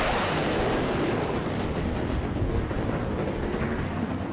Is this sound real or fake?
real